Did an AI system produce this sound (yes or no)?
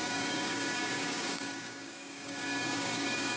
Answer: yes